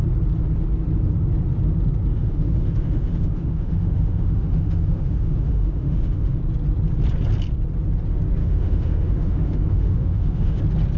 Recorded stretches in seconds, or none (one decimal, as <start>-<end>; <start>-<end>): 0.0-2.1; 6.4-8.4; 10.6-11.0